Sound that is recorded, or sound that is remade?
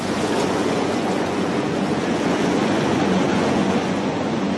remade